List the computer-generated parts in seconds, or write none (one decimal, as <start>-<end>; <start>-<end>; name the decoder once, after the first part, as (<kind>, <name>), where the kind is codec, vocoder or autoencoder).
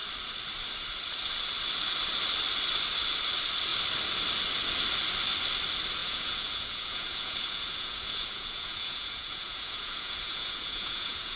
6.0-11.4 (vocoder, Vocos)